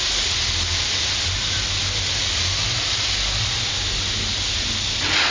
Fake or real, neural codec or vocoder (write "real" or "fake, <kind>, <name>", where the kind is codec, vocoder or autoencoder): real